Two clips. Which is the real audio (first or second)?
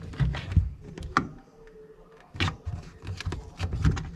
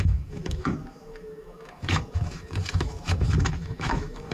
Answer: first